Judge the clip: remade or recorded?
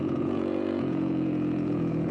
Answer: remade